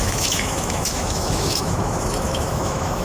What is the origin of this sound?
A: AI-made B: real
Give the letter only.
A